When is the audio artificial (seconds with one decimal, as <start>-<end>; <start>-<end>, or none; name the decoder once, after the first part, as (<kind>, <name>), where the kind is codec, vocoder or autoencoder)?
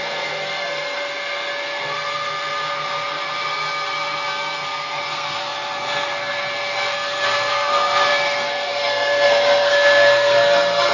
0.0-10.9 (codec, SNAC)